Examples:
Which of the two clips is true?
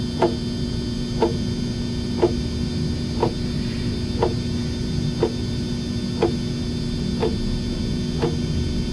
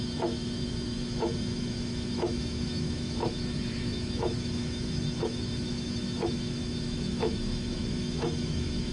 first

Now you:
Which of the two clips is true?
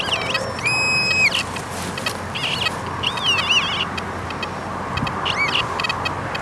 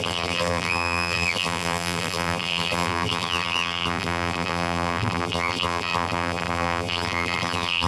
first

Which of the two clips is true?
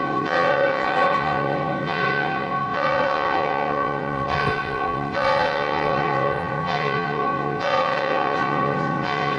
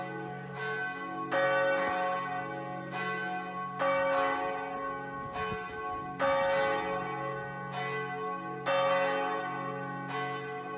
second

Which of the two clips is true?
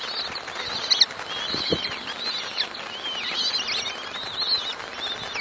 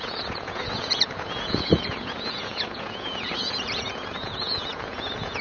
first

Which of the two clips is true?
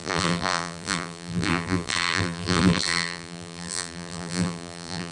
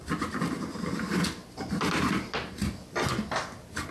second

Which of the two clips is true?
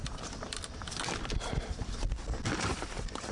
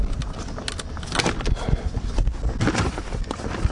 second